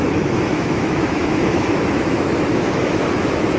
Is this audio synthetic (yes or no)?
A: yes